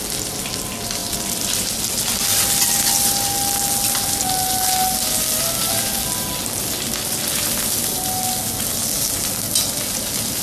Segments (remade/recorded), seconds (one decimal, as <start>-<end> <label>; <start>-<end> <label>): 0.0-1.0 recorded; 1.0-1.8 remade; 1.8-10.4 recorded